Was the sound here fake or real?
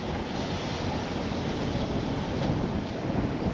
real